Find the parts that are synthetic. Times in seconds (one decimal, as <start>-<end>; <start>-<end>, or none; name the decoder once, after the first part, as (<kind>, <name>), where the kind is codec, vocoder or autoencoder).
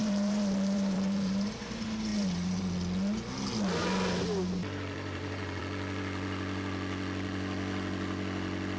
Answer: 0.0-1.7 (vocoder, BigVGAN v2); 2.1-2.7; 4.6-5.6